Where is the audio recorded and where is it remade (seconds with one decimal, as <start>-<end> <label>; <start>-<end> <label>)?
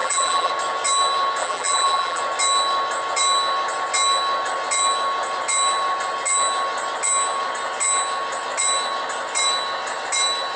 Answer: 0.0-0.5 remade; 0.5-1.4 recorded; 1.4-2.2 remade; 2.2-10.6 recorded